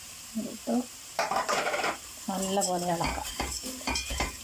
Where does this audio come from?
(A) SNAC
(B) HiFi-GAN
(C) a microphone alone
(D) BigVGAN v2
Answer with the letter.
D